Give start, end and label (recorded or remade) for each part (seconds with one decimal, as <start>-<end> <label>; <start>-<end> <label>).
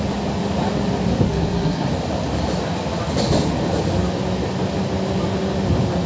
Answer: 0.0-1.1 recorded; 1.1-1.9 remade; 1.9-6.1 recorded